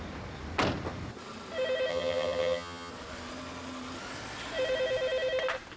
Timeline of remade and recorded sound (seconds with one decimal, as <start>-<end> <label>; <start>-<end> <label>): 0.0-1.9 recorded; 1.9-2.9 remade; 2.9-5.8 recorded